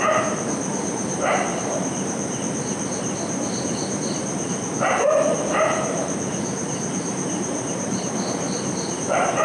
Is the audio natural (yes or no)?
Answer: no